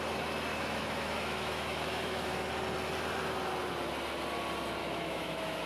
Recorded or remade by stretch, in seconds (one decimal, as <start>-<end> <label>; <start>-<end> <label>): 0.0-0.5 recorded; 0.5-2.5 remade; 2.5-4.8 recorded; 4.8-5.7 remade